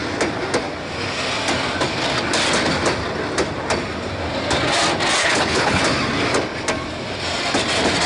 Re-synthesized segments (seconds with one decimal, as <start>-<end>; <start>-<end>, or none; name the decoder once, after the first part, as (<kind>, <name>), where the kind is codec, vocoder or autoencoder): 5.2-5.8 (codec, HILCodec)